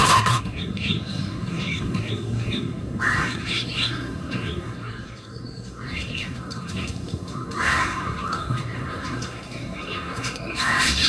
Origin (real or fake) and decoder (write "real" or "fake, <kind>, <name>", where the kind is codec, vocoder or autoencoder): fake, codec, SNAC